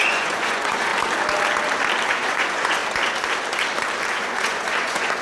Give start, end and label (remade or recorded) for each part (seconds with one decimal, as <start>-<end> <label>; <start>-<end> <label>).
0.0-0.9 remade; 0.9-2.1 recorded; 2.1-2.8 remade; 2.8-4.1 recorded; 4.1-5.2 remade